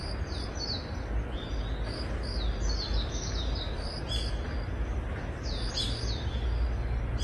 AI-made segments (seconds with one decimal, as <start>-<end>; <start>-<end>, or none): 0.0-0.6